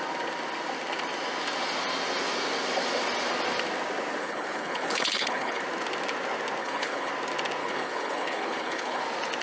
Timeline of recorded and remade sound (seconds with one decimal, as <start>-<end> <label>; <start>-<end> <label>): 0.0-4.2 recorded; 4.2-5.6 remade; 5.6-6.6 recorded; 6.6-7.1 remade; 7.1-7.6 recorded; 7.6-9.0 remade; 9.0-9.4 recorded